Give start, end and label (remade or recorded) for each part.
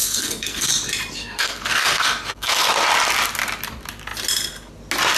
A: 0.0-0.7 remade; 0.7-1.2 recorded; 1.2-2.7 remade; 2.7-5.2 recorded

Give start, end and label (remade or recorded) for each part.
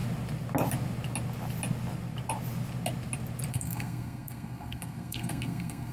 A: 0.0-3.5 recorded; 3.5-5.9 remade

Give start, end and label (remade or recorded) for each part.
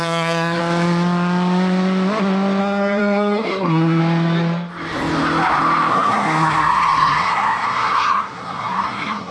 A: 0.0-0.6 remade; 0.6-2.6 recorded; 2.6-4.0 remade; 4.0-5.9 recorded; 5.9-9.3 remade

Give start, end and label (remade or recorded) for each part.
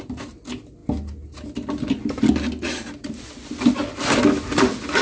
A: 0.0-5.0 recorded